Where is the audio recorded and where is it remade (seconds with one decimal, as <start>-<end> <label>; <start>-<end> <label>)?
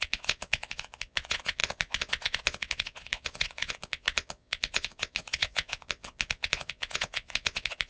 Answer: 0.0-7.9 remade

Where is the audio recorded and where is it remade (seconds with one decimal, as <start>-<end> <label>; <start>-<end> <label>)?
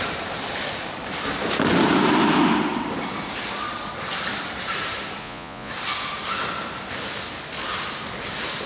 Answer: 0.0-5.2 recorded; 5.2-5.7 remade; 5.7-8.7 recorded